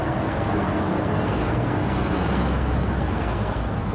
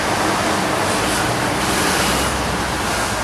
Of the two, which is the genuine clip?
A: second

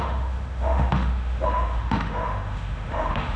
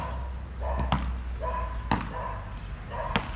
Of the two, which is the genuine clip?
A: second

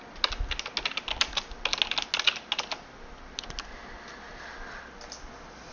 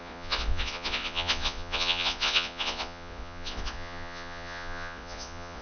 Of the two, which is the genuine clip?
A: first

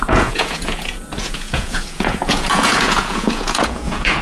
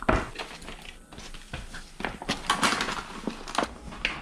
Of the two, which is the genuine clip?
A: second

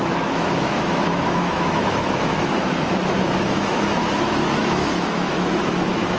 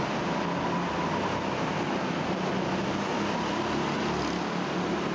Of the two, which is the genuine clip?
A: second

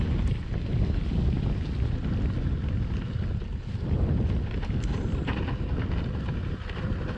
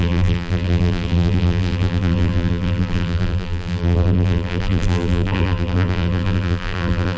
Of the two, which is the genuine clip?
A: first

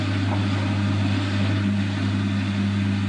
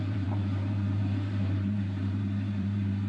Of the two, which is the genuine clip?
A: first